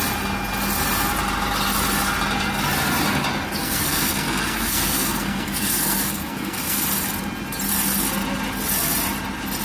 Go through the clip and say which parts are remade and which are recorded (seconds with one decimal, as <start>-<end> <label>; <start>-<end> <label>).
0.0-3.6 recorded; 3.6-6.8 remade; 6.8-9.6 recorded

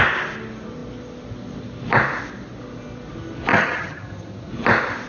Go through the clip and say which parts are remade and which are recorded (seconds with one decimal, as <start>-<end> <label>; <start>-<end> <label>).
0.0-3.5 recorded; 3.5-4.5 remade; 4.5-5.1 recorded

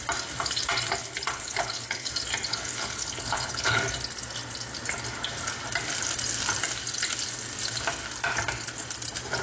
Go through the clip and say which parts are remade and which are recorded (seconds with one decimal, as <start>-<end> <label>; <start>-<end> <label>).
0.0-1.0 recorded; 1.0-2.1 remade; 2.1-2.5 recorded; 2.5-3.8 remade; 3.8-9.4 recorded

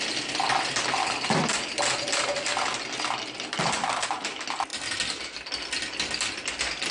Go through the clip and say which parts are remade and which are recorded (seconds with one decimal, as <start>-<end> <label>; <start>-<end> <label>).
0.0-6.9 recorded

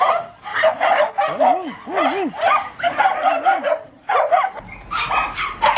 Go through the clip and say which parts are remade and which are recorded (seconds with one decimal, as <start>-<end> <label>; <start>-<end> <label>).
0.0-0.5 recorded; 0.5-1.1 remade; 1.1-2.6 recorded; 2.6-4.0 remade; 4.0-5.8 recorded

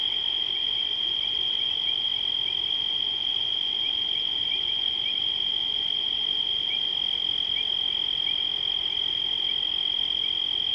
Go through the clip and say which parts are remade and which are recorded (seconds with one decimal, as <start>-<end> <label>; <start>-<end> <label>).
0.0-2.1 remade; 2.1-2.7 recorded; 2.7-6.9 remade; 6.9-10.7 recorded